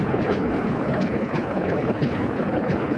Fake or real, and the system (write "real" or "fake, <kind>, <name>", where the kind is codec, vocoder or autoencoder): fake, codec, HILCodec